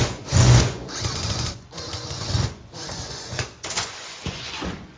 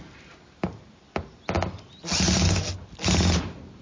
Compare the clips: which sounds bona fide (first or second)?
second